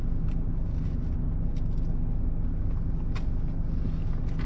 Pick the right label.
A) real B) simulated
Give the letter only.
A